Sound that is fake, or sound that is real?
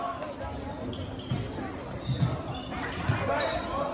real